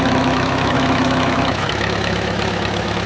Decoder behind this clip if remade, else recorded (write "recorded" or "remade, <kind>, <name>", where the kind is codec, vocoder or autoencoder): remade, autoencoder, DAC-VAE